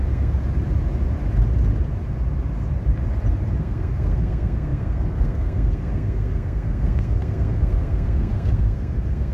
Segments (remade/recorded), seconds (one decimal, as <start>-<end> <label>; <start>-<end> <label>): 0.0-0.4 remade; 0.4-3.6 recorded; 3.6-9.3 remade